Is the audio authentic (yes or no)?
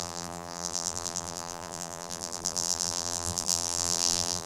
no